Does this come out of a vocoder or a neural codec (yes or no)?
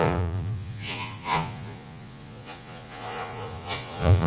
yes